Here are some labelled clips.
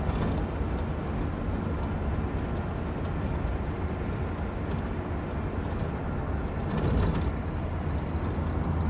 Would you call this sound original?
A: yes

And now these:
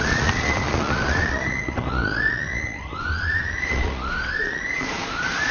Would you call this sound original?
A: no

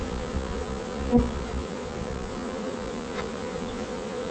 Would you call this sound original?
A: no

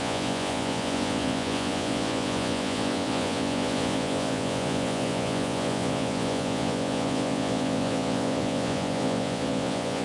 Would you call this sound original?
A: no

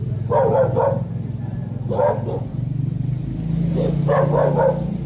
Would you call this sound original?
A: yes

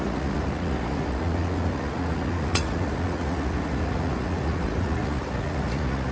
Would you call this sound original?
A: no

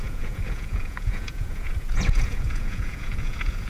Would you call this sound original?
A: no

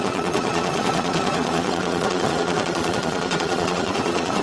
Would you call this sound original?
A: no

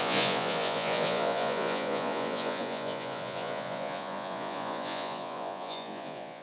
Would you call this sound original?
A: no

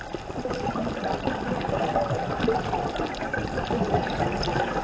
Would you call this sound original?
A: yes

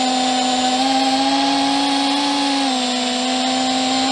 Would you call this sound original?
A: yes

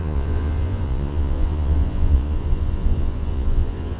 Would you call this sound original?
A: no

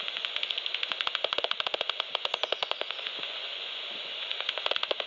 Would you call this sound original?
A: no